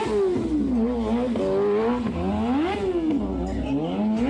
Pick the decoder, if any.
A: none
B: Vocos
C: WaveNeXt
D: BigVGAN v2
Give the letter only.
A